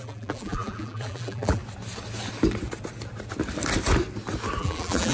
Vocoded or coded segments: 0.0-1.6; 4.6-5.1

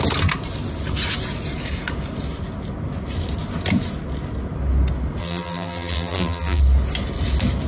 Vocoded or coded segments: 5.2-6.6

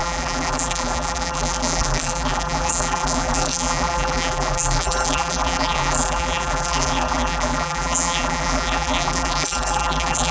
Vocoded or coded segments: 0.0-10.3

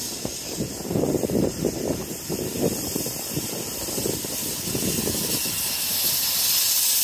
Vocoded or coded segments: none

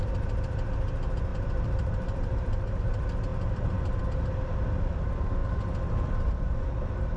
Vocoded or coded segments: 1.3-2.8